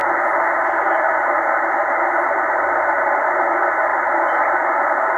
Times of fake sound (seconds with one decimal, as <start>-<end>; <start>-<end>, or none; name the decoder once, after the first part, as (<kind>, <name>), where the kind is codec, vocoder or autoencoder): none